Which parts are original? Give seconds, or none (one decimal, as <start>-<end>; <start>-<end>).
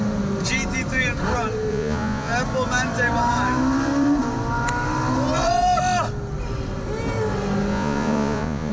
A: 0.0-1.7; 2.3-7.7